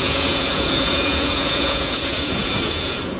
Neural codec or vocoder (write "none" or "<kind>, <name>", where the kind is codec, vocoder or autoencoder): vocoder, Vocos